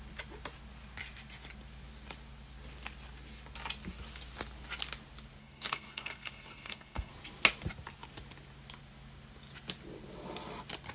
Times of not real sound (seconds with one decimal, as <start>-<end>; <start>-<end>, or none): 5.4-7.1